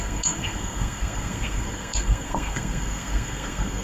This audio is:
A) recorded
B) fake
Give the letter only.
B